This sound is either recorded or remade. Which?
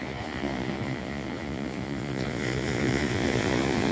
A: remade